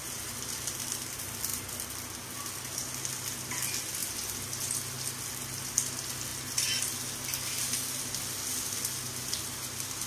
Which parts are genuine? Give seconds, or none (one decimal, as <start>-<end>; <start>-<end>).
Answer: 0.0-10.1